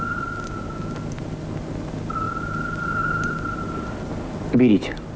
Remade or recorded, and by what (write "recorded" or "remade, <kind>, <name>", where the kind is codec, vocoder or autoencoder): recorded